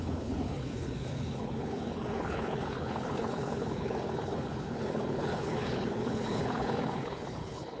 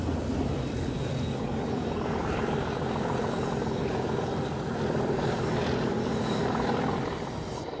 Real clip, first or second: second